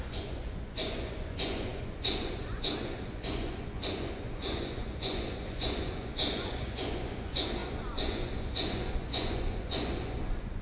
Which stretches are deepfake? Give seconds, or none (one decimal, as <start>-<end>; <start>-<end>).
0.0-10.6